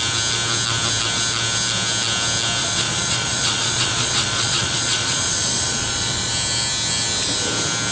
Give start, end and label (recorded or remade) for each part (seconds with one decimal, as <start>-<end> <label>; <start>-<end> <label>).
0.0-2.6 recorded; 2.6-6.3 remade; 6.3-7.9 recorded